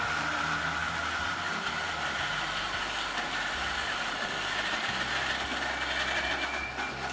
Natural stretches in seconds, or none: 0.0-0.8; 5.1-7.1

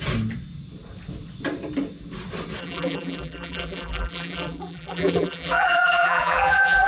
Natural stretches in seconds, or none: 0.0-2.6

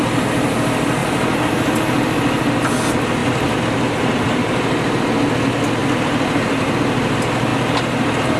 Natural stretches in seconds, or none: 0.0-1.0; 1.7-3.2; 5.0-5.8; 6.7-7.5

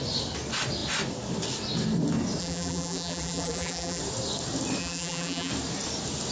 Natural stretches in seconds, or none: 0.0-2.4; 4.0-4.8; 5.5-6.3